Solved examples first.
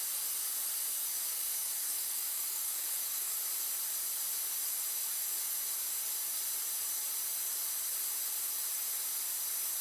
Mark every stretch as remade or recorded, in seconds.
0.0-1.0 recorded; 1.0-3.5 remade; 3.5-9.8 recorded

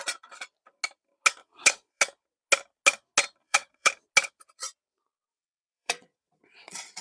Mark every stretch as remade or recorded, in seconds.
0.0-1.4 recorded; 1.4-2.0 remade; 2.0-3.4 recorded; 3.4-3.9 remade; 3.9-5.3 recorded; 5.3-7.0 remade

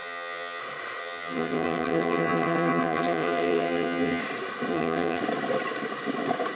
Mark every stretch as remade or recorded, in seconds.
0.0-0.6 remade; 0.6-1.0 recorded; 1.0-4.2 remade; 4.2-4.7 recorded; 4.7-5.2 remade; 5.2-6.6 recorded

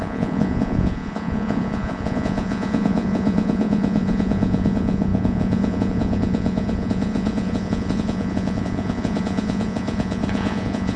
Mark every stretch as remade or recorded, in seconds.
0.0-11.0 remade

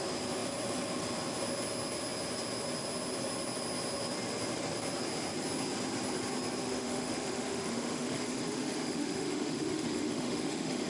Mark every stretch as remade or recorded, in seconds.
0.0-6.6 recorded; 6.6-10.9 remade

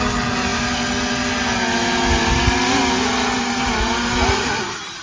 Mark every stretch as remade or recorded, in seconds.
0.0-5.0 recorded

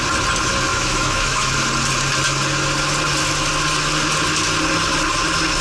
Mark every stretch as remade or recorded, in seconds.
0.0-0.7 recorded; 0.7-1.5 remade; 1.5-5.6 recorded

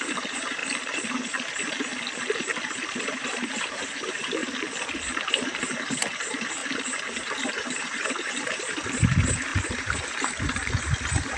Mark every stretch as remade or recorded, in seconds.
0.0-0.6 remade; 0.6-3.0 recorded; 3.0-4.4 remade; 4.4-5.1 recorded; 5.1-6.6 remade; 6.6-7.2 recorded; 7.2-11.4 remade